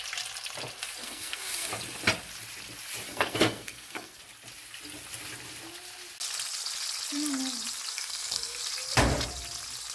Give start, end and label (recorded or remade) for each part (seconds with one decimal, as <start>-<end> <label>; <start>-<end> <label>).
0.0-1.0 recorded; 1.0-1.7 remade; 1.7-3.1 recorded; 3.1-4.2 remade; 4.2-7.9 recorded; 7.9-8.6 remade; 8.6-9.9 recorded